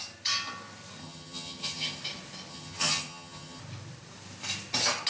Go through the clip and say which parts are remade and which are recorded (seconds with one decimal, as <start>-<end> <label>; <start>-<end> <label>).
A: 0.0-1.0 recorded; 1.0-2.0 remade; 2.0-2.5 recorded; 2.5-3.6 remade; 3.6-5.1 recorded

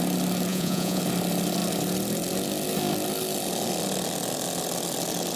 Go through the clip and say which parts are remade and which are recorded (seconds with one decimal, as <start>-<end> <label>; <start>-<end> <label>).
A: 0.0-0.5 recorded; 0.5-1.0 remade; 1.0-5.4 recorded